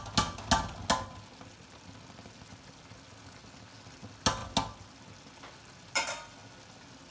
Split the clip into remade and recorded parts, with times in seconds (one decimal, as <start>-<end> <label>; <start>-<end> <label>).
0.0-7.1 recorded